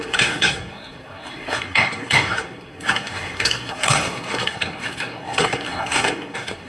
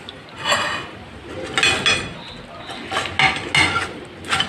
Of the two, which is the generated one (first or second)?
first